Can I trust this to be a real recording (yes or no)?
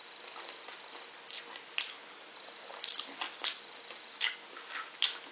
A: yes